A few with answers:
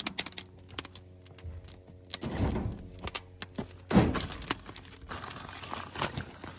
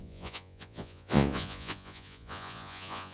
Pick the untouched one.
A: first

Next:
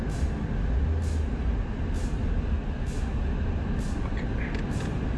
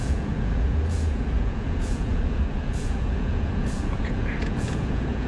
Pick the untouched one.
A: first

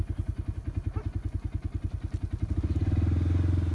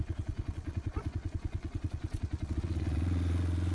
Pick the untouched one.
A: first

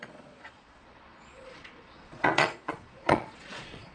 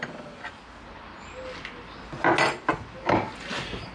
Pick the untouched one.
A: second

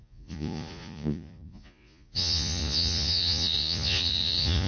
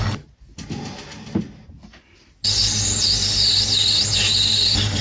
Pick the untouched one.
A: second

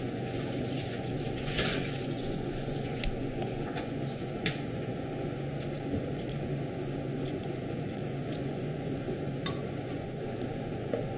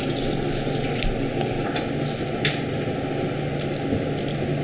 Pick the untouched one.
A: second